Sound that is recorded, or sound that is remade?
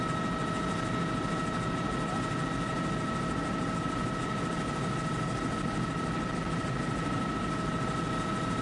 recorded